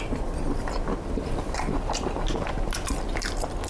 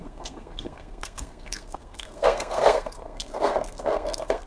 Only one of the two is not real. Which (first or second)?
second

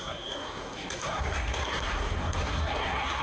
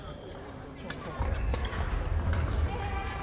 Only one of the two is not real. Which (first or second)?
first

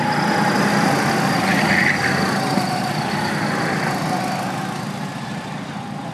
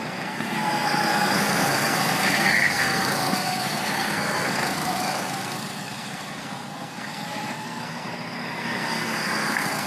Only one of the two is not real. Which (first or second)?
second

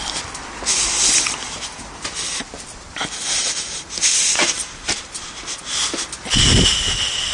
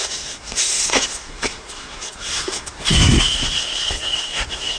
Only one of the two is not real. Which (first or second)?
second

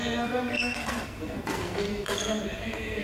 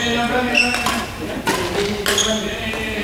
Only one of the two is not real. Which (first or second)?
first